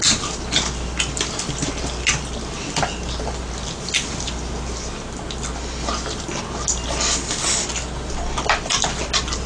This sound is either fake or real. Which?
real